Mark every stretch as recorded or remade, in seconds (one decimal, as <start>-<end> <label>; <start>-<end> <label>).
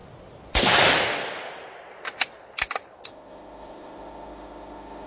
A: 0.0-3.1 recorded; 3.1-5.1 remade